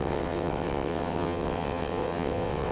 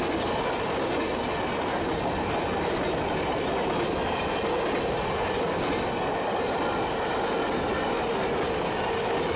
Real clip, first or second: second